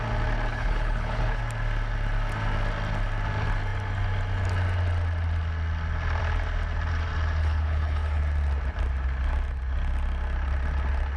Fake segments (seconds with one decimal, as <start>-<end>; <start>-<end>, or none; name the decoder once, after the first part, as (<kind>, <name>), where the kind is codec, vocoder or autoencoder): 0.5-1.4 (codec, HILCodec); 7.4-8.2